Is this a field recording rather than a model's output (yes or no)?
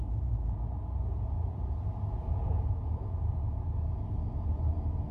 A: no